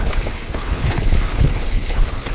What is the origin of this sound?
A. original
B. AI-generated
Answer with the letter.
B